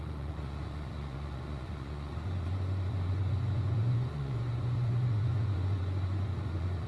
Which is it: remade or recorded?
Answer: remade